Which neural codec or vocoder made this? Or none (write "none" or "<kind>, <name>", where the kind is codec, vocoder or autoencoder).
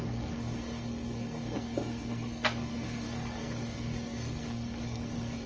codec, SNAC